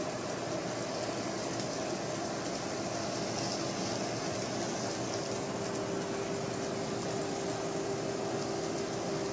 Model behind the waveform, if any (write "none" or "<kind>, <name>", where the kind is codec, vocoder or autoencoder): none